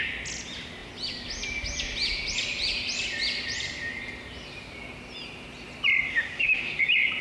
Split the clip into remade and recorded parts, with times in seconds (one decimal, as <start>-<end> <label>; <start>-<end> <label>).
0.0-6.1 recorded; 6.1-6.8 remade; 6.8-7.2 recorded